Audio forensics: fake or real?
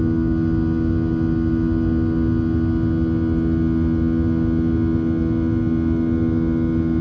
real